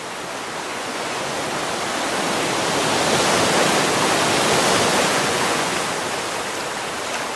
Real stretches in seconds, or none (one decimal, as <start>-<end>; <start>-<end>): 0.0-0.7; 1.4-5.1; 5.8-7.4